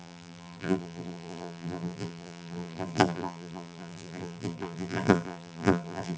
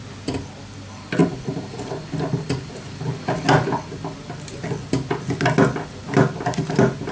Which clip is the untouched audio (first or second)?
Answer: second